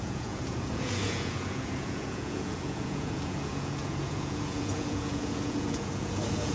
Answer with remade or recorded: remade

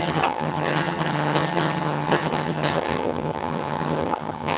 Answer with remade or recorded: remade